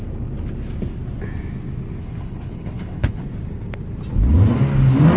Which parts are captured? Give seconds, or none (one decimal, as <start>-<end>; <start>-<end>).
0.0-2.0; 3.2-5.2